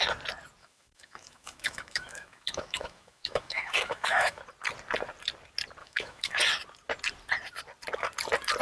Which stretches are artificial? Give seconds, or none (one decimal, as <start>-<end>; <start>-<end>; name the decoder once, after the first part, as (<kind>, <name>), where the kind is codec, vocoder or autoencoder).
0.6-4.4 (autoencoder, DAC-VAE); 5.8-6.4